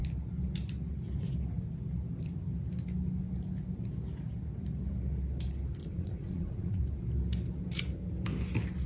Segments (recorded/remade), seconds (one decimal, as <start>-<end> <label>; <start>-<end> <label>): 0.0-5.8 recorded; 5.8-6.8 remade; 6.8-8.9 recorded